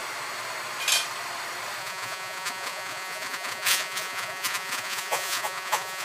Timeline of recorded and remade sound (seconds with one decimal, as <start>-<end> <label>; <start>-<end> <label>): 0.0-1.8 recorded; 1.8-6.0 remade